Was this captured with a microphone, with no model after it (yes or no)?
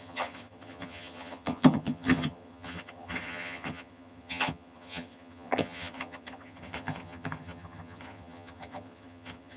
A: no